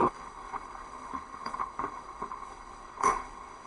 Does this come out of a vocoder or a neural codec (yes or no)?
yes